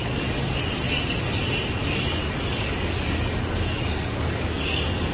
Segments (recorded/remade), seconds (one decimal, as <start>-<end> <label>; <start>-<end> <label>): 0.0-0.6 remade; 0.6-1.8 recorded; 1.8-5.1 remade